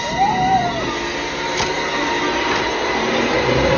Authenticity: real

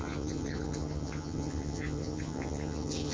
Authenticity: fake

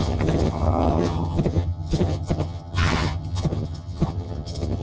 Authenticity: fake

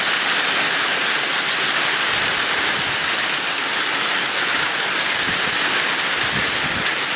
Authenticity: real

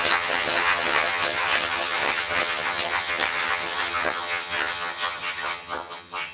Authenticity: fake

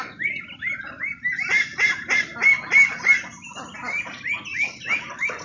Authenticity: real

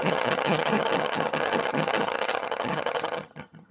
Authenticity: fake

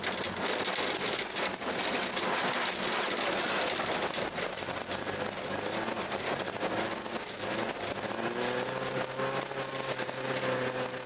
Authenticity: real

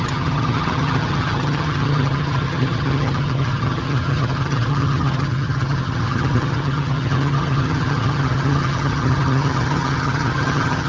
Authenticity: fake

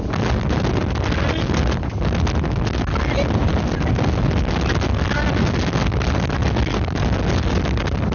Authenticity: real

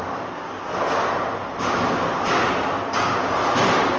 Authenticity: real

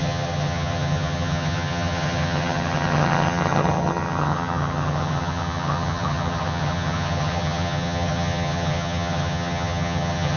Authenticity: fake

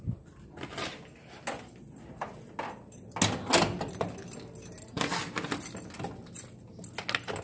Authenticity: real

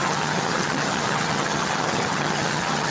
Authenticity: fake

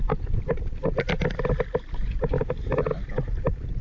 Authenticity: real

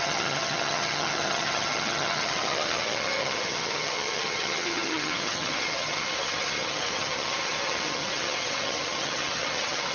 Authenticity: fake